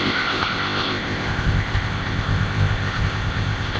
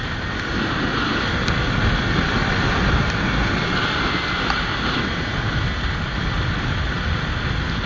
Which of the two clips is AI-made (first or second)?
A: first